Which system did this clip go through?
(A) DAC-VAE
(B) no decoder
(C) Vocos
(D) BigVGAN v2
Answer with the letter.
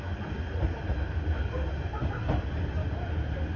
B